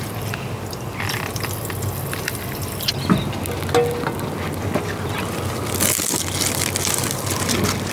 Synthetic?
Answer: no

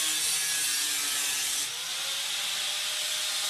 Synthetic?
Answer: no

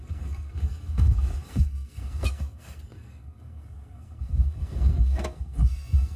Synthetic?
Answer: yes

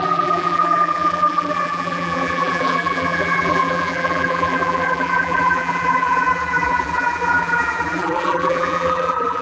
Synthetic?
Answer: yes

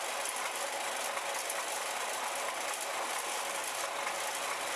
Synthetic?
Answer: no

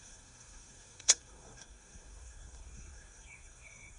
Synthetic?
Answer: yes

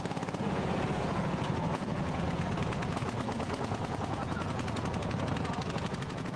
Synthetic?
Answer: yes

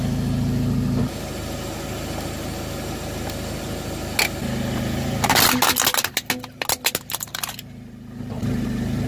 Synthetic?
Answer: no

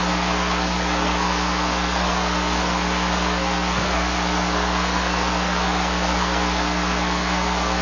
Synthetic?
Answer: yes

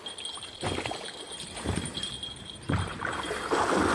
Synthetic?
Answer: no